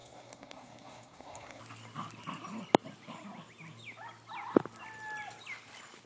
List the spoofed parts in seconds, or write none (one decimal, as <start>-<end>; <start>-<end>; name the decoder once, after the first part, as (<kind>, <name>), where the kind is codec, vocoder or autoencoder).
0.0-1.6 (codec, SNAC)